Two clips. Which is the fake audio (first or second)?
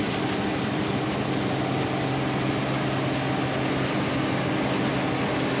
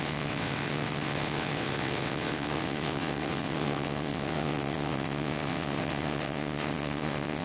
second